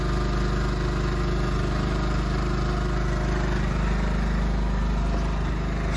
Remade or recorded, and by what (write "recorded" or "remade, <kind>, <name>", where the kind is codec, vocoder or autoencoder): recorded